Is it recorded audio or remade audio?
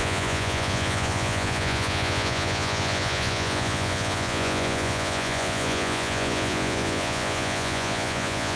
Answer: remade